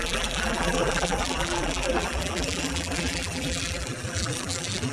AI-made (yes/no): yes